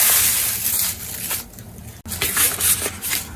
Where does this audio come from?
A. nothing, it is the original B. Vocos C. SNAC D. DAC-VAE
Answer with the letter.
A